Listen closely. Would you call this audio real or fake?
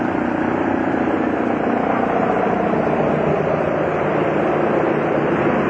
real